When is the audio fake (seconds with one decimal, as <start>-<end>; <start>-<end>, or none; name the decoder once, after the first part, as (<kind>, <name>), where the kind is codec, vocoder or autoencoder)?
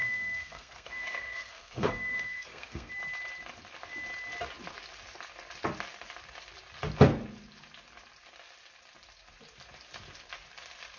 0.0-2.9 (codec, SNAC)